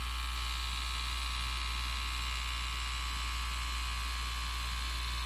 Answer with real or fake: real